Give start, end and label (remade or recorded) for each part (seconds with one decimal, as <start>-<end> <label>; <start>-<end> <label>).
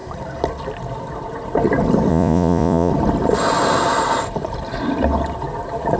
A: 0.0-2.1 recorded; 2.1-2.9 remade; 2.9-6.0 recorded